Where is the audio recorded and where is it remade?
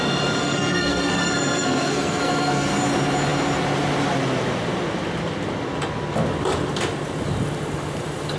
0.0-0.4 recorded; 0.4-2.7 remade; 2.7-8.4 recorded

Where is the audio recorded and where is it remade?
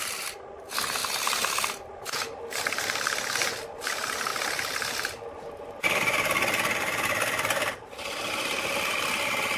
0.0-9.6 recorded